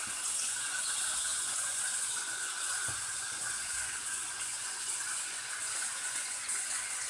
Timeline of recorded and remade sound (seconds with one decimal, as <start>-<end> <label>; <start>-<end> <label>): 0.0-7.1 remade